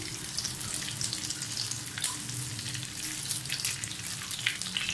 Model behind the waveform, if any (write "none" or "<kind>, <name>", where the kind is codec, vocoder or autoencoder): none